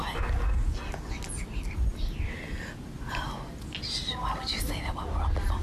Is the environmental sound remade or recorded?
recorded